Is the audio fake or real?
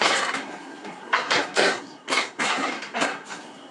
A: fake